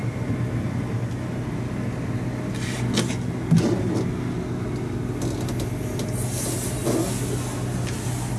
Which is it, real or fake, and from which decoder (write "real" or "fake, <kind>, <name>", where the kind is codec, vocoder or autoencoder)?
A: real